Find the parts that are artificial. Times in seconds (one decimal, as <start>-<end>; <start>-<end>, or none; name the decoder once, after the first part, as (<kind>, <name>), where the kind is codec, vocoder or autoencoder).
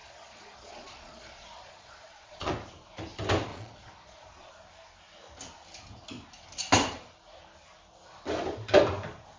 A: 0.0-2.5 (vocoder, Vocos); 3.5-4.5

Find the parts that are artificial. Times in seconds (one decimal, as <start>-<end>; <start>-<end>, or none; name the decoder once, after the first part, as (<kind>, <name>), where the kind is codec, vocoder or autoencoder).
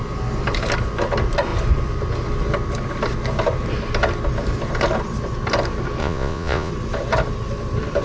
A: 6.0-6.7 (vocoder, Vocos)